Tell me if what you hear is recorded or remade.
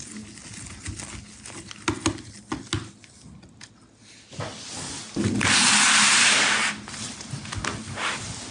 recorded